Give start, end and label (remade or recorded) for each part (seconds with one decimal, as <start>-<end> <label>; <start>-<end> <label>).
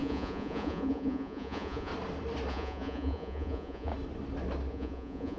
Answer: 0.0-1.9 remade; 1.9-2.5 recorded; 2.5-3.9 remade; 3.9-4.7 recorded; 4.7-5.4 remade